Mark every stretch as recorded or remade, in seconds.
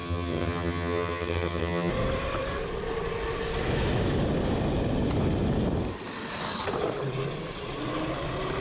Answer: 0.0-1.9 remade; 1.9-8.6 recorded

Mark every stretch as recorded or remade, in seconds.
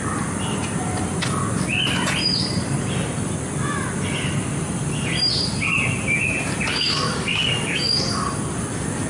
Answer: 0.0-6.7 recorded; 6.7-8.1 remade; 8.1-9.1 recorded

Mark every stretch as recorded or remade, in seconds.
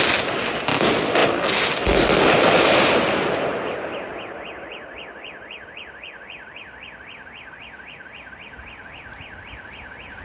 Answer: 0.0-10.2 recorded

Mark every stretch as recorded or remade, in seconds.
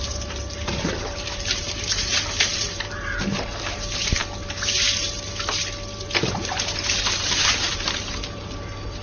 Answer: 0.0-4.2 remade; 4.2-7.2 recorded; 7.2-9.0 remade